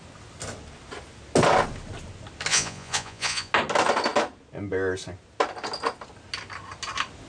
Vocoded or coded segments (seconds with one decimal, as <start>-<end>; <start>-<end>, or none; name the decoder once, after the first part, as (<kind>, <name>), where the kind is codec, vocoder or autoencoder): 2.5-3.5 (vocoder, Vocos)